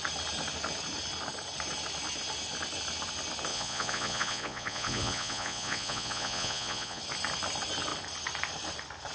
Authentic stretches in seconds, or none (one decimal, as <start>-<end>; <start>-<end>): 0.0-3.5; 7.0-9.1